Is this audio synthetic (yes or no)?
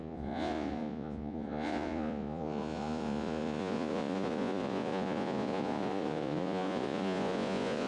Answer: yes